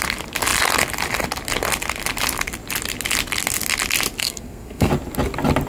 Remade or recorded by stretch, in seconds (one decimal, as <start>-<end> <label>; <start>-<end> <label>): 0.0-4.2 recorded; 4.2-4.9 remade; 4.9-5.7 recorded